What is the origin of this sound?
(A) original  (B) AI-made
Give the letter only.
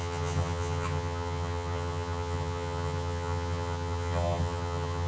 B